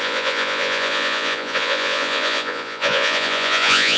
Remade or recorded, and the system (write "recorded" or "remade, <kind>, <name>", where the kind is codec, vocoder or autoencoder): remade, vocoder, Vocos